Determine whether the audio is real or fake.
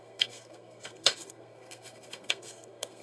fake